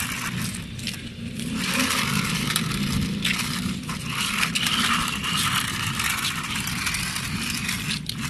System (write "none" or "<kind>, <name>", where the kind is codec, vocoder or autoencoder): none